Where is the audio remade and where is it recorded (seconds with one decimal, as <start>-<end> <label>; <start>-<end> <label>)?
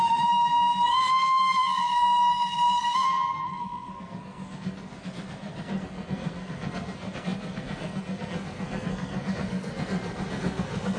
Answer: 0.0-11.0 remade